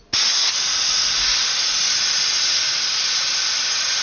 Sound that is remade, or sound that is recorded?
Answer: recorded